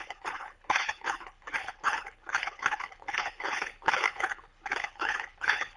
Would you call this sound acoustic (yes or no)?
no